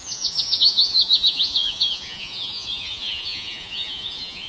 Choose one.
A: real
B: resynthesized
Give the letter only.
B